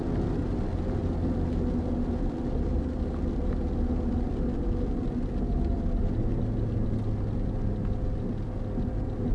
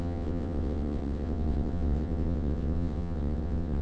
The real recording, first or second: first